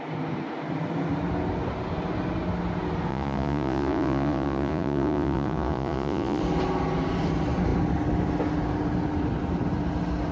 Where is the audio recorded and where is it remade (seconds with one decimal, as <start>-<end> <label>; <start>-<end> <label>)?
0.0-3.1 recorded; 3.1-6.4 remade; 6.4-10.3 recorded